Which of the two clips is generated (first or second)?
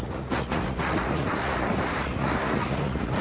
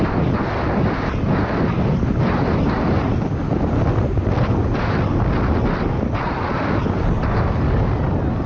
first